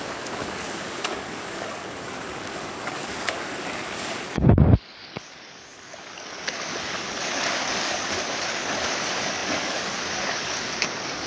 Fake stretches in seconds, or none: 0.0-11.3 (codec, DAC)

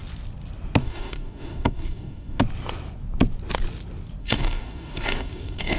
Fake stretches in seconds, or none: 0.8-2.4 (codec, DAC); 4.2-5.8

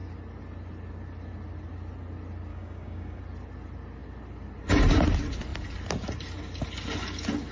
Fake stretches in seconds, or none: 2.5-3.2 (codec, DAC)

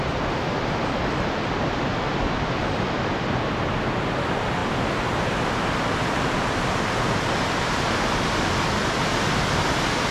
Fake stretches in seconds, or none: none

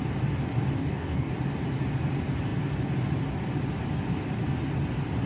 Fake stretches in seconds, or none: 0.8-1.3 (codec, DAC)